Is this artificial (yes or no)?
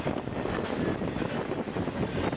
no